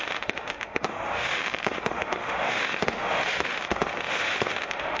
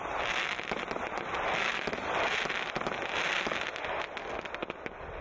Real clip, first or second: second